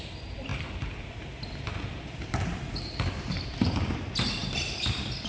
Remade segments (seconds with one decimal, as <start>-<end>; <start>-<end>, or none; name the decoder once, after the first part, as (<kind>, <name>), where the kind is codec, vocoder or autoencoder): 0.0-5.3 (vocoder, BigVGAN v2)